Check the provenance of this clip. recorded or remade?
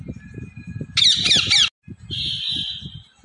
recorded